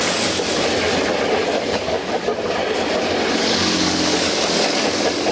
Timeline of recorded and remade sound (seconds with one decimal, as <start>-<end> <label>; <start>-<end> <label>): 0.0-0.5 remade; 0.5-1.7 recorded; 1.7-2.3 remade; 2.3-3.3 recorded; 3.3-5.3 remade